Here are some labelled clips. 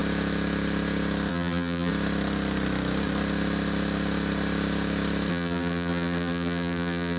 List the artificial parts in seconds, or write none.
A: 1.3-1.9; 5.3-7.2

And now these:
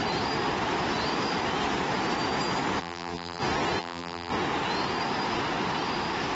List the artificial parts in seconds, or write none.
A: 2.8-3.4; 3.8-4.3